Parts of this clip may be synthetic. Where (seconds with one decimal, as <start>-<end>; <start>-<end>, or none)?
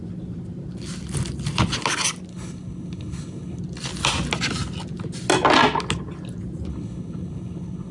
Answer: 2.3-3.6; 6.7-7.9